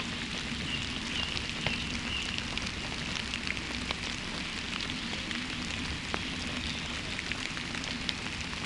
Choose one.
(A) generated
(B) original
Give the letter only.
B